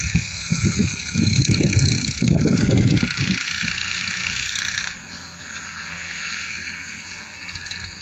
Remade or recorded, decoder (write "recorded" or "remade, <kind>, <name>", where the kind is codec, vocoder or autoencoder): remade, codec, SNAC